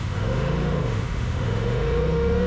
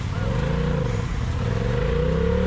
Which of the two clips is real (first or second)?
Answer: second